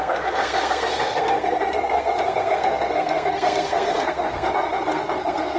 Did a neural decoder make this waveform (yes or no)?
yes